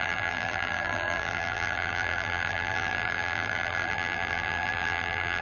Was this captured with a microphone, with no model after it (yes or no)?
no